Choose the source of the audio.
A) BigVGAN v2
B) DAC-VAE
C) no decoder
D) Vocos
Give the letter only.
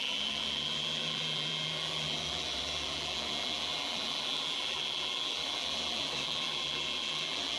A